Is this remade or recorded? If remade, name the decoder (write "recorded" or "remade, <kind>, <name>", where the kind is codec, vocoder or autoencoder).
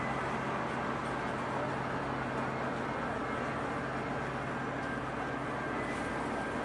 recorded